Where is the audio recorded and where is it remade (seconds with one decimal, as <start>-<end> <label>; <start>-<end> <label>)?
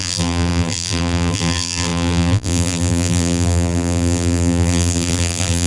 0.0-5.7 remade